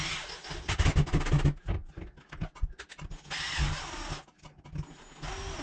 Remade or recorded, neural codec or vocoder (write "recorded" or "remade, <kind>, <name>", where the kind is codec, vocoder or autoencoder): recorded